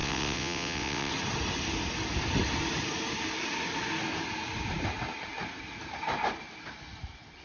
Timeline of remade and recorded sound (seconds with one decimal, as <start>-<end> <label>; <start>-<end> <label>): 0.0-1.1 remade; 1.1-7.4 recorded

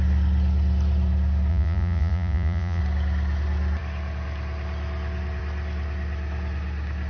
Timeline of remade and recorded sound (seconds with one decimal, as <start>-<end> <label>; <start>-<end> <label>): 0.0-1.5 recorded; 1.5-2.8 remade; 2.8-7.1 recorded